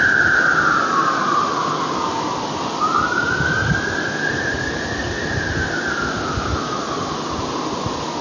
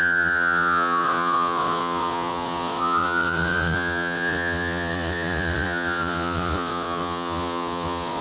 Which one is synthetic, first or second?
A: second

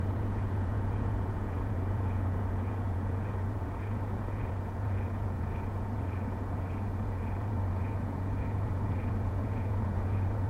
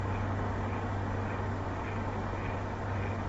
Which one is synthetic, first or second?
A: first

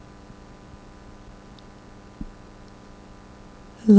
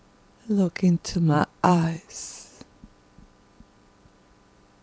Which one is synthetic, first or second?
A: second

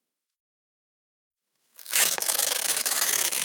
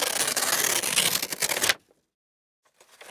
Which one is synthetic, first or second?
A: first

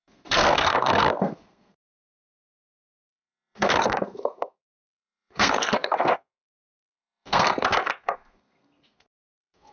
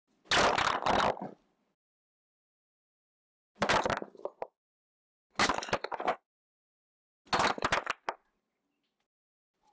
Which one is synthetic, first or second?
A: first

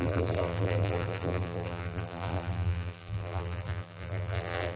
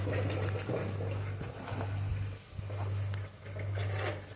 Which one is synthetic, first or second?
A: first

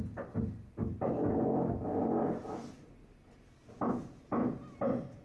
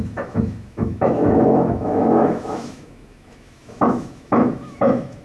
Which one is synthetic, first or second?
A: second